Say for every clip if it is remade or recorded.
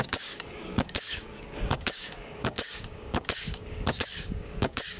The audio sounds remade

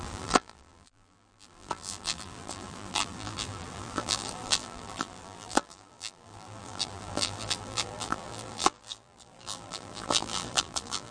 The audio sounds remade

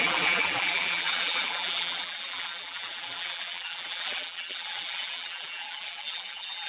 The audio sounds remade